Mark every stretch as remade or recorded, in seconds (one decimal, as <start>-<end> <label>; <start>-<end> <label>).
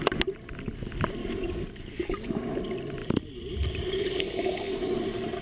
0.0-1.2 recorded; 1.2-2.6 remade; 2.6-5.4 recorded